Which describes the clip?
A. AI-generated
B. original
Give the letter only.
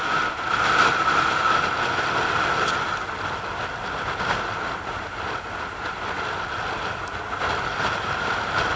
B